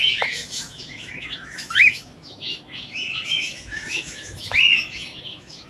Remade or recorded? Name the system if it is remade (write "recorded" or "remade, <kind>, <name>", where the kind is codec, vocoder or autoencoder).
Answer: remade, autoencoder, DAC-VAE